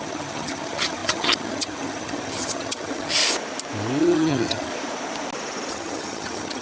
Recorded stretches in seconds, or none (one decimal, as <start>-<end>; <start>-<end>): 3.2-4.0; 4.7-5.7